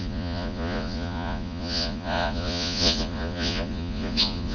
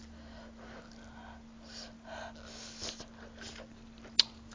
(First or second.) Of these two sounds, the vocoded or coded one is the first